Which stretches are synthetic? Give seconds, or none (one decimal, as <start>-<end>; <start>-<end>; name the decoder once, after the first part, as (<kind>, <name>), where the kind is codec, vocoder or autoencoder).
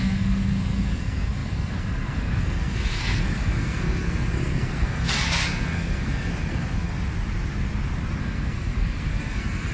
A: 0.0-6.9 (codec, SNAC); 8.2-9.7